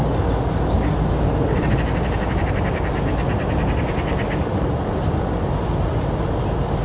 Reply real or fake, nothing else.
real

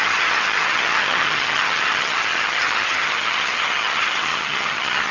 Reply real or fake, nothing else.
fake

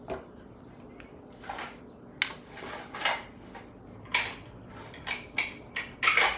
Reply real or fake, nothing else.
real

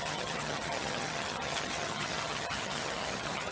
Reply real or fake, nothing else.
fake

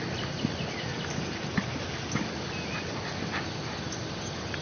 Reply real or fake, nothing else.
real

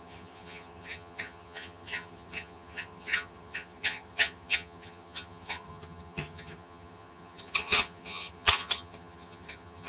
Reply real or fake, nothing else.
fake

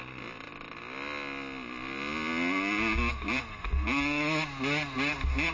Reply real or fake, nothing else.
real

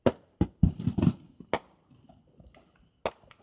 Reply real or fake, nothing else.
real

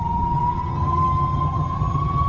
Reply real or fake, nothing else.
fake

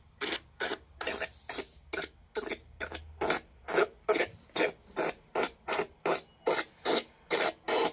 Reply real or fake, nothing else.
real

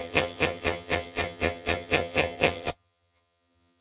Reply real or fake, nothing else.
fake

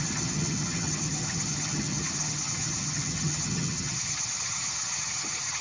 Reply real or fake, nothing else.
fake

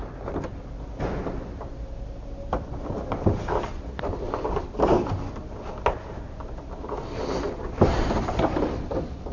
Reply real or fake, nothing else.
real